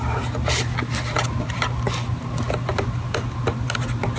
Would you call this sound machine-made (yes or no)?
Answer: no